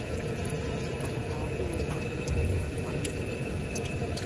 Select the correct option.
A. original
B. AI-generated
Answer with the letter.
B